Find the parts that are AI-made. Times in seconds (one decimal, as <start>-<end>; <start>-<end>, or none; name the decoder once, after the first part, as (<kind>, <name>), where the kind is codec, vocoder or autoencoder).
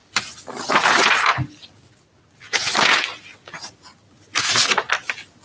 none